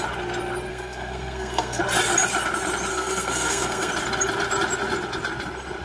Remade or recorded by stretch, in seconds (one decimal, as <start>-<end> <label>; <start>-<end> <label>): 0.0-0.7 recorded; 0.7-1.8 remade; 1.8-2.9 recorded; 2.9-3.9 remade; 3.9-5.8 recorded